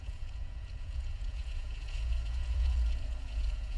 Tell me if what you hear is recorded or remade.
remade